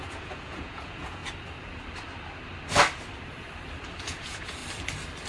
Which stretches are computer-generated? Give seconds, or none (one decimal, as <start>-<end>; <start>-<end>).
0.0-1.2; 4.0-4.6